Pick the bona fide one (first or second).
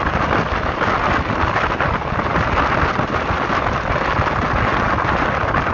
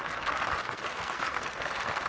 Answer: first